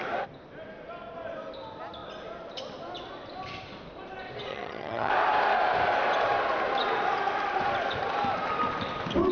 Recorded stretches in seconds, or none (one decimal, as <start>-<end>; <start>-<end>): 0.0-4.5; 5.1-9.3